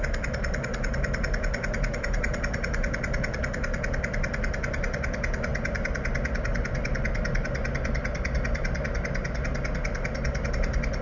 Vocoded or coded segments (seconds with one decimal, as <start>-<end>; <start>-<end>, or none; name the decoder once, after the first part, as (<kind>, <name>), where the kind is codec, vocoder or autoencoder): none